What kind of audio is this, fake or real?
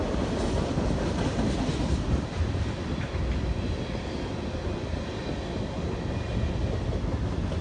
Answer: real